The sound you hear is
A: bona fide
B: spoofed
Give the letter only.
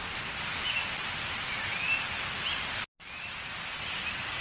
A